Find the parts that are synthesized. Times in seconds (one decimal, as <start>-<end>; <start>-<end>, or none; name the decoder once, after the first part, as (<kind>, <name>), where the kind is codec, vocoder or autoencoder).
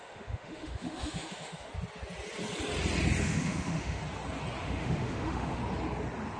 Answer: 0.0-1.7 (autoencoder, DAC-VAE); 3.2-4.0; 4.6-5.6